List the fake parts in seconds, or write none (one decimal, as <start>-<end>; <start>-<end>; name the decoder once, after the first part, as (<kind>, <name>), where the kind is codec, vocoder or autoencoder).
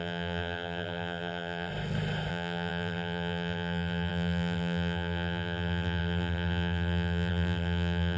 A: 0.0-1.7 (vocoder, BigVGAN v2); 2.3-8.2